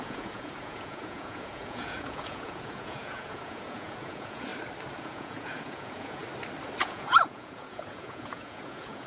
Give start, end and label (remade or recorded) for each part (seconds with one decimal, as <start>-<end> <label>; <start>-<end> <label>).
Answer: 0.0-4.5 remade; 4.5-5.0 recorded; 5.0-6.2 remade; 6.2-6.8 recorded; 6.8-9.1 remade